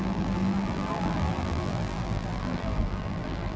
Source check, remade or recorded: remade